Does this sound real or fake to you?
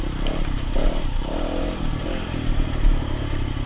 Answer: fake